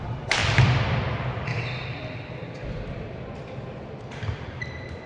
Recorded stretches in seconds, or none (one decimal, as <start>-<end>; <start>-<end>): none